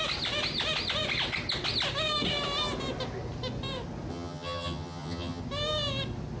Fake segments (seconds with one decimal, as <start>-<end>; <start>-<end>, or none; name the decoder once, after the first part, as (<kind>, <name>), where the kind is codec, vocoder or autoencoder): 4.1-5.4 (vocoder, HiFi-GAN)